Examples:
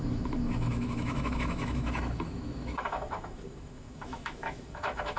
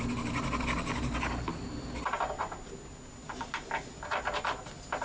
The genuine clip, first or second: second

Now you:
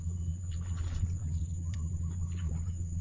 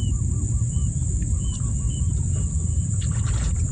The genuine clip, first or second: second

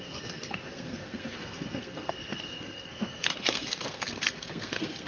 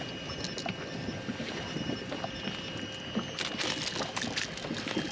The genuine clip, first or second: second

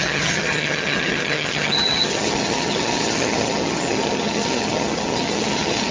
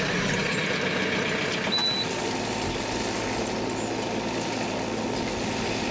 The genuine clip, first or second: second